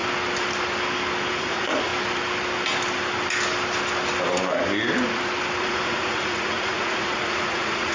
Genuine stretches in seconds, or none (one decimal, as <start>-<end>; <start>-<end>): 0.0-1.3; 1.9-5.6